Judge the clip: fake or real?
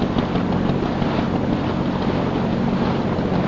real